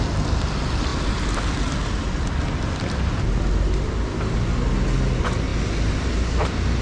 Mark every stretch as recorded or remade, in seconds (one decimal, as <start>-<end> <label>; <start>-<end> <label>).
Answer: 0.0-6.8 recorded